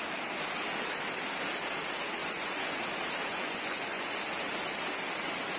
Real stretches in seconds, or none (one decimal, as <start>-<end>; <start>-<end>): 0.0-2.2; 2.8-3.3; 4.2-5.6